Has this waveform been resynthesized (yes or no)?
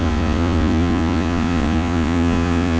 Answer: yes